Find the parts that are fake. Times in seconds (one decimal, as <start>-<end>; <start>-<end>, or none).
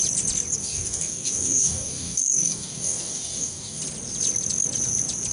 0.6-3.8